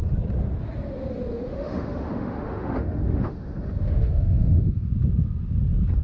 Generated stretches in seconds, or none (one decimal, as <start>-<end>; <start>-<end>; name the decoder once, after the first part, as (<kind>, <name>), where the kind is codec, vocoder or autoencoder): 1.3-4.9 (autoencoder, DAC-VAE)